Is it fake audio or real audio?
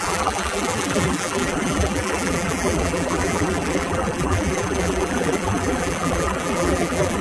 fake